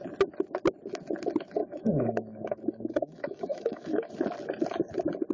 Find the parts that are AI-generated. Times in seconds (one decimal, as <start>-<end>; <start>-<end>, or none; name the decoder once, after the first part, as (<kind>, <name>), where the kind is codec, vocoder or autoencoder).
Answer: 1.6-4.1 (autoencoder, DAC-VAE)